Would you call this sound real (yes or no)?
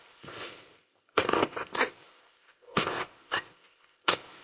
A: no